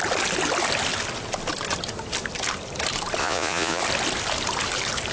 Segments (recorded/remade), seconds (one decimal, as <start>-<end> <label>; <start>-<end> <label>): 0.0-3.2 recorded; 3.2-3.8 remade; 3.8-5.1 recorded

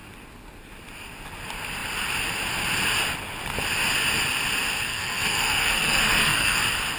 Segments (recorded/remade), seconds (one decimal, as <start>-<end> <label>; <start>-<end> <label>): 0.0-4.9 recorded; 4.9-6.6 remade; 6.6-7.0 recorded

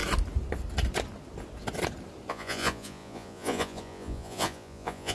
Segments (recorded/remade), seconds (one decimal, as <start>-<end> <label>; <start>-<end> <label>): 0.0-2.3 recorded; 2.3-5.1 remade

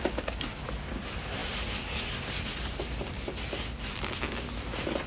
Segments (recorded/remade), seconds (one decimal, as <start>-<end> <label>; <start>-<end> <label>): 0.0-5.1 recorded